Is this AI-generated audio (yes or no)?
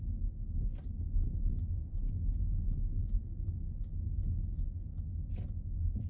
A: no